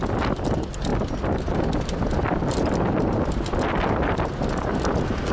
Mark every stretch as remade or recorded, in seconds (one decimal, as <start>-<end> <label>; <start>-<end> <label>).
0.0-5.3 recorded